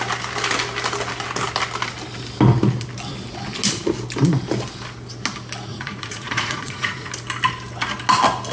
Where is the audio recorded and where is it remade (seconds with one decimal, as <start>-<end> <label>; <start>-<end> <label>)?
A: 0.0-5.7 recorded; 5.7-7.1 remade; 7.1-8.5 recorded